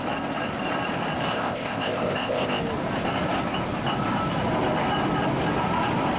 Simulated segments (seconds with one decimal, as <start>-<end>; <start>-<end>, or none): 1.3-2.6